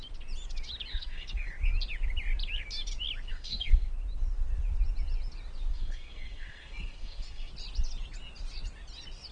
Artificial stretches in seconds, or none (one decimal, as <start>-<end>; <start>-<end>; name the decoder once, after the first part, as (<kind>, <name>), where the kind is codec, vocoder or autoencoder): 0.9-1.5 (codec, SNAC); 3.3-3.9; 5.7-7.5

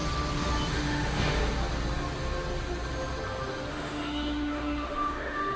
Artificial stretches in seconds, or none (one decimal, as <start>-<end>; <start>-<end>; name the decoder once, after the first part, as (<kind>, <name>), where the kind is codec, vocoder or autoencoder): 0.7-1.4 (autoencoder, DAC-VAE); 3.7-5.6

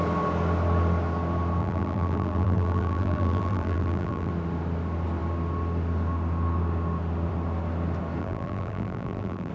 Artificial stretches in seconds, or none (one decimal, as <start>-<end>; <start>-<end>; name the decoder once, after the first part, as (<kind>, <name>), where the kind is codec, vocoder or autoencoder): 1.6-4.3 (vocoder, BigVGAN v2); 8.2-9.5

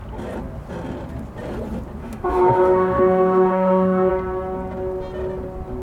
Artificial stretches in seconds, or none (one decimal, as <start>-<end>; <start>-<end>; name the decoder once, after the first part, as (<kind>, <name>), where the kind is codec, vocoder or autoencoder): 2.0-4.1 (autoencoder, DAC-VAE)

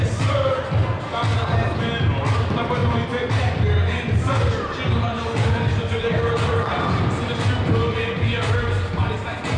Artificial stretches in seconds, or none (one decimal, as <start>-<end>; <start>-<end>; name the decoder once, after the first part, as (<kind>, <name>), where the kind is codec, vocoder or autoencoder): none

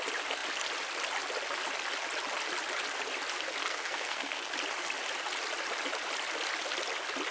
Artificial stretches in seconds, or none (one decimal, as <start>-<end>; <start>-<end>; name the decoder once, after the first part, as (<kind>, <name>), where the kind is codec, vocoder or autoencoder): 3.6-4.5 (codec, SNAC)

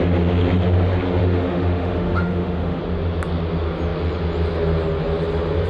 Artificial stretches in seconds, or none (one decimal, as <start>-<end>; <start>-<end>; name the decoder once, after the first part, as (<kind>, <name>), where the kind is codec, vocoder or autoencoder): 1.2-2.8 (autoencoder, DAC-VAE)

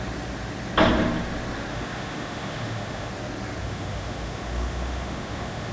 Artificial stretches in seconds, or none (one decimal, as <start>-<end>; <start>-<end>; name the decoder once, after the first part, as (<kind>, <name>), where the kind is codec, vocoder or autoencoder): 1.7-3.1 (autoencoder, DAC-VAE); 3.6-5.7